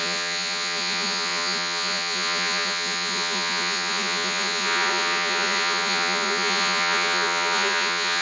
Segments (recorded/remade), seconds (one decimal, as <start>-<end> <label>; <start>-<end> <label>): 0.0-8.2 remade